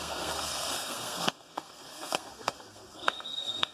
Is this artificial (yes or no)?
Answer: yes